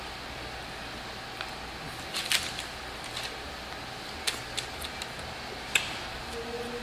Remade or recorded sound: recorded